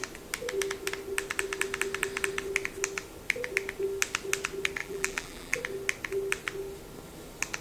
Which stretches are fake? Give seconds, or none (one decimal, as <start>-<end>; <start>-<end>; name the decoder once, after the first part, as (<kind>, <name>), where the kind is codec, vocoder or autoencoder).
4.8-5.6 (vocoder, BigVGAN v2)